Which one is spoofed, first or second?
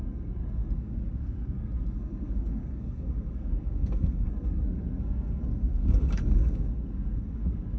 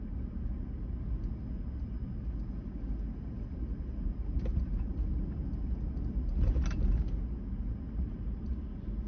first